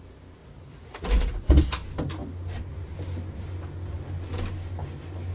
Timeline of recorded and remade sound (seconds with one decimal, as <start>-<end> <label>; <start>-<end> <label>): 0.0-0.4 recorded; 0.4-1.6 remade; 1.6-5.3 recorded